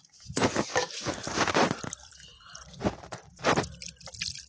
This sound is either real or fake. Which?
real